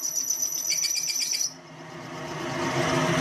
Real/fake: real